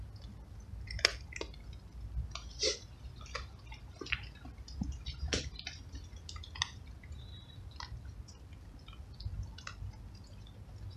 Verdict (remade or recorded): recorded